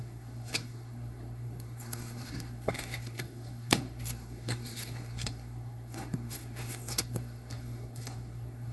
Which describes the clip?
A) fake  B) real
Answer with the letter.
A